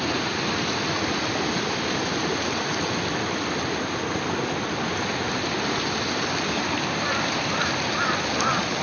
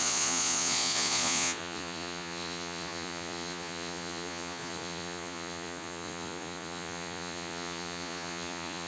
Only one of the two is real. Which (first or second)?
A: first